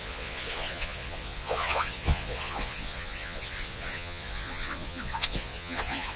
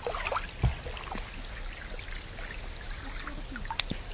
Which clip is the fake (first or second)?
first